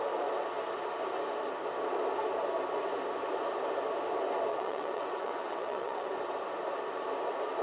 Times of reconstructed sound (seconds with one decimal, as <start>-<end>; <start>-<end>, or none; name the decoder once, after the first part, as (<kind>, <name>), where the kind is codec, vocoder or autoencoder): 4.5-6.1 (vocoder, WaveNeXt)

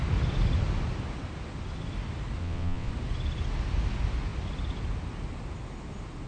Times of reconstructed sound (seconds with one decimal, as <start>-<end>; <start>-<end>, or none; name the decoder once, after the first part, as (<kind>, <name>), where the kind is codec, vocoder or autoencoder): 2.4-2.9 (vocoder, WaveNeXt)

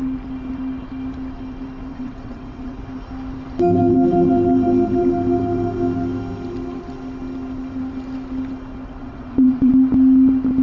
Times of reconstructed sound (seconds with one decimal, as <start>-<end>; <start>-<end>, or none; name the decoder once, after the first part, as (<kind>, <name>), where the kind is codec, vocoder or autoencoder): 1.9-2.8 (vocoder, WaveNeXt); 9.0-9.7

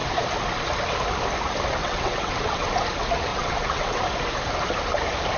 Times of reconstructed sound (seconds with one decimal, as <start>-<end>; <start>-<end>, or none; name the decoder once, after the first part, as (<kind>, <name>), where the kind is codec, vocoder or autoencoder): 1.8-2.7 (vocoder, WaveNeXt); 3.3-4.0

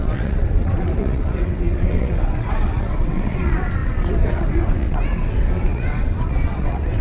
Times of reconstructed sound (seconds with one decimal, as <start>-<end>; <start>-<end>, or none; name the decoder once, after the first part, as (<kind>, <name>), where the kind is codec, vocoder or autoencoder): 0.0-7.0 (vocoder, WaveNeXt)